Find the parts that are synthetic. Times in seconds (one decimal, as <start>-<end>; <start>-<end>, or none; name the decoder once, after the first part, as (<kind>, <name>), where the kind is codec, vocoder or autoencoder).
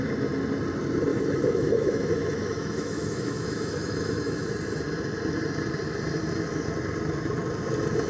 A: 1.1-4.5 (autoencoder, DAC-VAE)